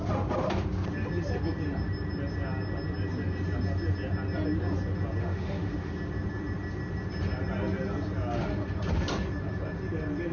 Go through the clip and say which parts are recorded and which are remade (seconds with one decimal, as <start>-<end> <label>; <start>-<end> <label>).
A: 0.0-5.2 recorded; 5.2-5.9 remade; 5.9-10.3 recorded